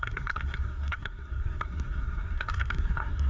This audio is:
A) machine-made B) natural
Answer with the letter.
A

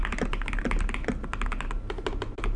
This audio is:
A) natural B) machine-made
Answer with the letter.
A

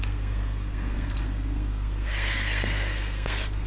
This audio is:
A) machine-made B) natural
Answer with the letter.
A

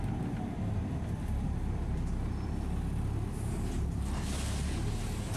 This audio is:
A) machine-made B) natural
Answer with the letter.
B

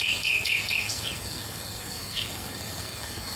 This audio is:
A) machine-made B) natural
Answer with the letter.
A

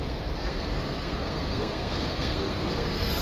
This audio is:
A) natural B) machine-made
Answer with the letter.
B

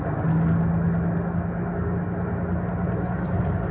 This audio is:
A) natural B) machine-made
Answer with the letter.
A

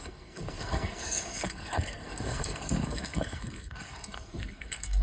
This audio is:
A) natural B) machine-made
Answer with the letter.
B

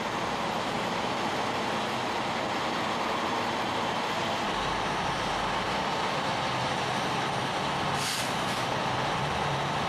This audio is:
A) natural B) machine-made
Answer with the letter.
A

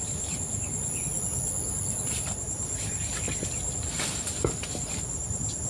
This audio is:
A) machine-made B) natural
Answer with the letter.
B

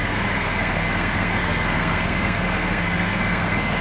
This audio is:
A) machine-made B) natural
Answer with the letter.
A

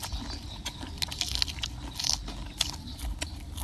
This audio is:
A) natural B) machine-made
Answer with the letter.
A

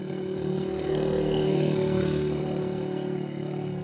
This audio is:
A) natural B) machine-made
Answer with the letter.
B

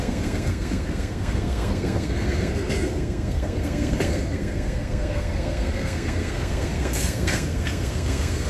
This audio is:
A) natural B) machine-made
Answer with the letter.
B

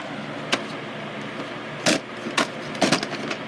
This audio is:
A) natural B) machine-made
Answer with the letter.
A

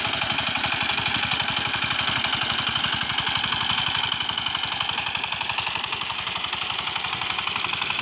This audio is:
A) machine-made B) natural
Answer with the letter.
B